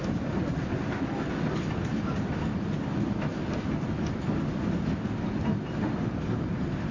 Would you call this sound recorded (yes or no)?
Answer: yes